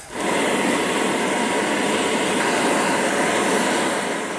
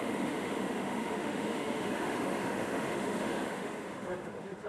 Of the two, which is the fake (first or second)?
second